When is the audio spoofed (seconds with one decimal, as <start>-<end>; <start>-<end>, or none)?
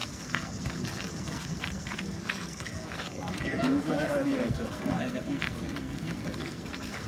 0.0-7.1